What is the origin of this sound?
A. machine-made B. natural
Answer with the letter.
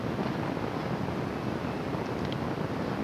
B